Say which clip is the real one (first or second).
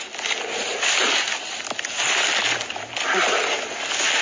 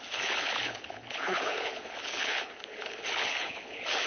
first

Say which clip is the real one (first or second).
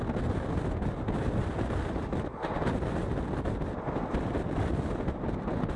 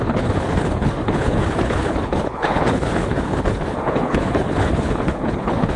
first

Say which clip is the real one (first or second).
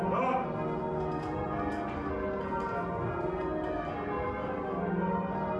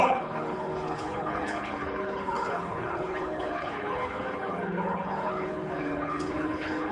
first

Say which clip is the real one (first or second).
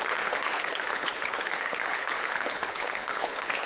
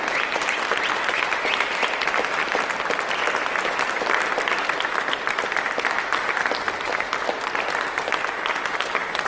second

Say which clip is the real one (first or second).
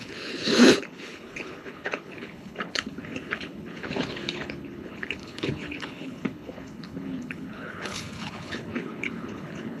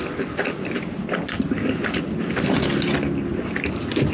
second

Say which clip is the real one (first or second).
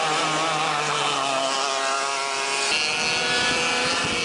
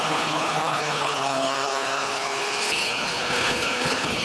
first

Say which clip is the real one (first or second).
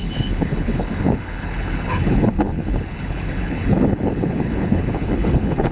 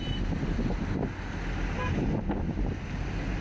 second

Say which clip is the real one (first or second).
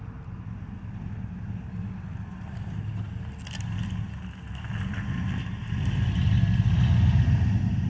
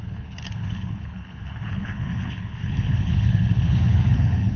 first